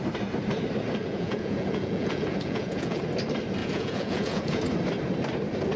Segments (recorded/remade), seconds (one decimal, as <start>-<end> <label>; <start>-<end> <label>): 0.0-1.0 recorded; 1.0-3.0 remade; 3.0-3.6 recorded; 3.6-4.6 remade; 4.6-5.8 recorded